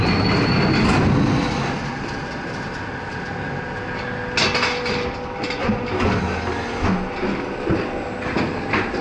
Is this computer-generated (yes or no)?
no